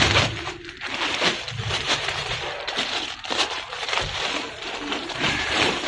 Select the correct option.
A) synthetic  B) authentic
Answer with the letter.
A